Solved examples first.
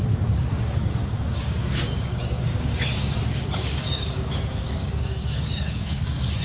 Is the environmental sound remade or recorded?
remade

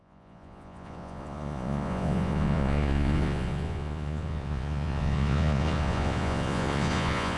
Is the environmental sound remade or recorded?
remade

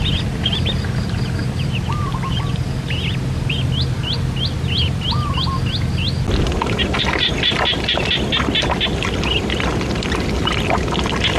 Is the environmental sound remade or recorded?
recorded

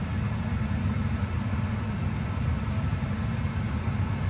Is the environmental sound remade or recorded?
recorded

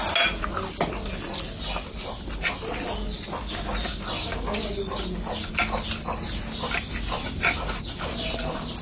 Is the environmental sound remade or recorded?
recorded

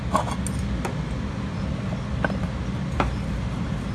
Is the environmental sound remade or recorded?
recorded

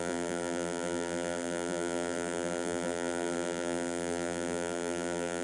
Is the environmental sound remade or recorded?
remade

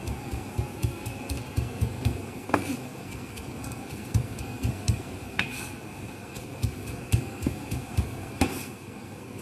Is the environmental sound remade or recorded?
remade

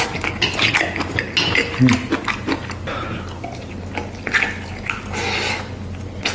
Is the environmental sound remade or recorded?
recorded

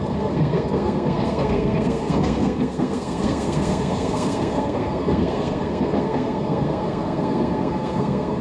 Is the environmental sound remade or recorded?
remade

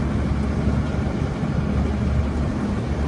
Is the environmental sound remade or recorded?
recorded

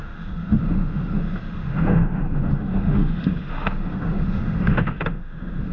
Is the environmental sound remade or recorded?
remade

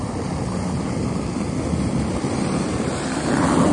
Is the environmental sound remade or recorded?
recorded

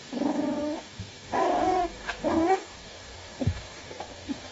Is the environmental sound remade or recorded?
remade